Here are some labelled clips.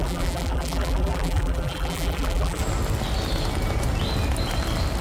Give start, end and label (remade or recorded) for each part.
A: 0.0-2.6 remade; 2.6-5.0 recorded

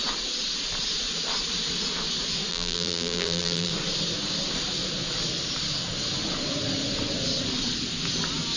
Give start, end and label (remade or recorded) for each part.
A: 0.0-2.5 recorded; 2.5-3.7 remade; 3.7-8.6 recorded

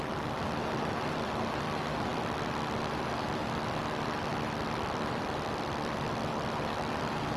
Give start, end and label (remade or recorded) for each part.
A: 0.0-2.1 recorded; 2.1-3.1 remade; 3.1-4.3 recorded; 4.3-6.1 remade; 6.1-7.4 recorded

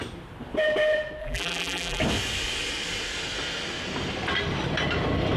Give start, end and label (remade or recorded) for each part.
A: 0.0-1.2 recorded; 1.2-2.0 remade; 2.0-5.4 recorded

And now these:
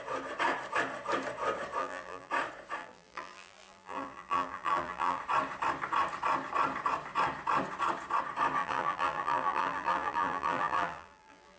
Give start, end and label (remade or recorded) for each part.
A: 0.0-1.8 recorded; 1.8-2.3 remade; 2.3-2.8 recorded; 2.8-5.2 remade; 5.2-8.6 recorded; 8.6-11.6 remade

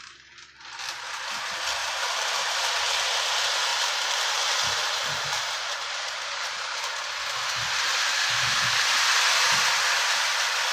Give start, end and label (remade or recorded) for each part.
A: 0.0-1.8 recorded; 1.8-2.9 remade; 2.9-3.7 recorded; 3.7-7.1 remade; 7.1-10.7 recorded